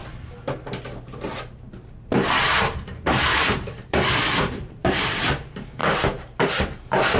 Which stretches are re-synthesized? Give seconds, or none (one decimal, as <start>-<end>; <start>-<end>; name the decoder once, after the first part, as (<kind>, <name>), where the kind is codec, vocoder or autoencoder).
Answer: 2.6-5.8 (vocoder, BigVGAN v2); 6.5-7.2